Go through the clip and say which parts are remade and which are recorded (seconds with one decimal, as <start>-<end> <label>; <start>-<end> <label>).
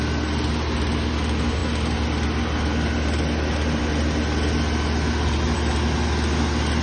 0.0-6.8 recorded